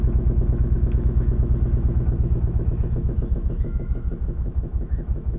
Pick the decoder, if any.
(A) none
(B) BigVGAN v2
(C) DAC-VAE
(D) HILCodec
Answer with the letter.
C